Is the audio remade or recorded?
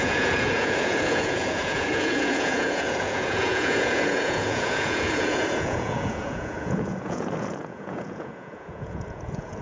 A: remade